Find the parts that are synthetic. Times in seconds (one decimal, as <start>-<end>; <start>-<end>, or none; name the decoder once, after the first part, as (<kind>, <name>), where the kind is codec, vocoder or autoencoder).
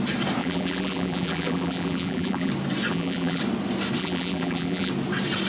0.4-2.5 (vocoder, BigVGAN v2); 2.9-3.4; 4.0-4.9